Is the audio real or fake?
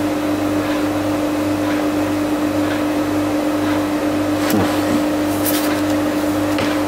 real